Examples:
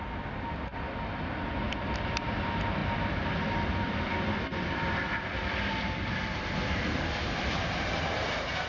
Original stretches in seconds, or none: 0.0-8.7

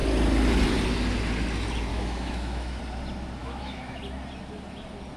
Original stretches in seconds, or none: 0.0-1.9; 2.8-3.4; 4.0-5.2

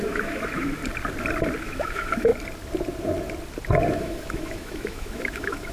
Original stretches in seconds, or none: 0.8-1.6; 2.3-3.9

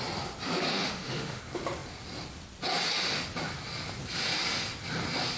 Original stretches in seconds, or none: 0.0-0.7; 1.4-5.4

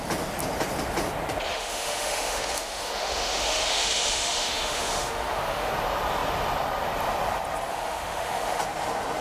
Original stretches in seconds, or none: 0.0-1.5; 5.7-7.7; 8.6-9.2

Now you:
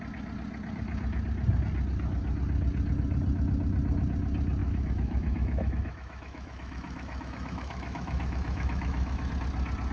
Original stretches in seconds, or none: 0.0-4.6; 9.3-9.9

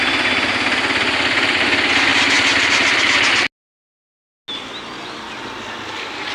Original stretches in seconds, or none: 0.0-6.3